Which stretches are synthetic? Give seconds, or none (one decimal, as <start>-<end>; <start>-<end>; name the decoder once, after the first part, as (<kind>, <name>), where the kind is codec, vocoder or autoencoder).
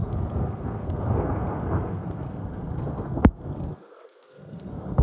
0.0-5.0 (codec, SNAC)